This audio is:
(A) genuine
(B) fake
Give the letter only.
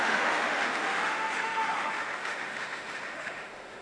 B